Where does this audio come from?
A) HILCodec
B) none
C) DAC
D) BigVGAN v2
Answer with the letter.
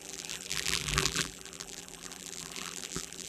D